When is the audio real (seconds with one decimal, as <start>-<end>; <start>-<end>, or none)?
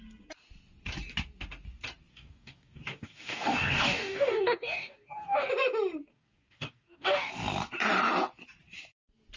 0.0-2.1; 5.5-6.1; 7.3-9.4